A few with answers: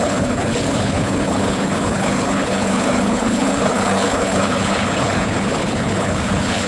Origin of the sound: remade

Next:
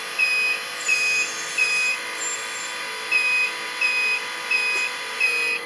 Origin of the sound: recorded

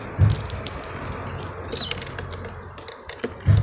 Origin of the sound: recorded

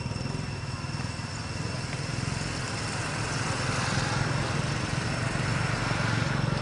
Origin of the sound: recorded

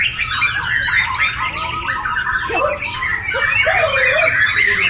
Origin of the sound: recorded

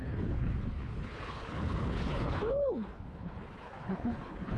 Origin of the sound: remade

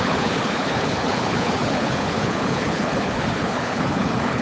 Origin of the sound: remade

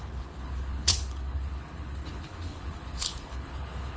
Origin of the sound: remade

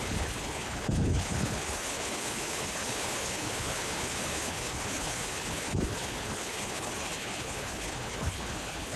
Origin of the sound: remade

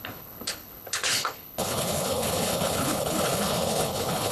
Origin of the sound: remade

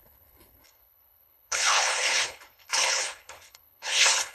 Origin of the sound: remade